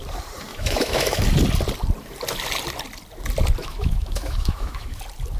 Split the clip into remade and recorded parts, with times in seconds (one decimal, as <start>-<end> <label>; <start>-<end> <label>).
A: 0.0-0.5 recorded; 0.5-1.2 remade; 1.2-3.6 recorded; 3.6-5.0 remade; 5.0-5.4 recorded